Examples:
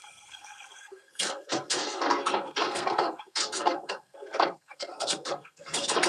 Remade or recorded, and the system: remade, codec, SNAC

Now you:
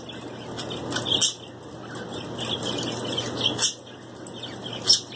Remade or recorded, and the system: recorded